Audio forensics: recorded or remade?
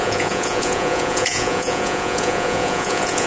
remade